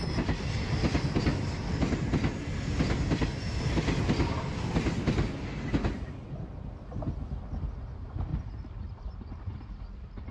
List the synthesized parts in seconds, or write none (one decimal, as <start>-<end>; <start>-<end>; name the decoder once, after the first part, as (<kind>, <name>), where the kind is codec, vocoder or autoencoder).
none